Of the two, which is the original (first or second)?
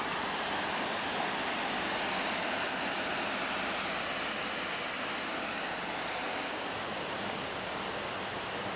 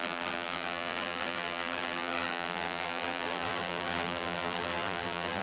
first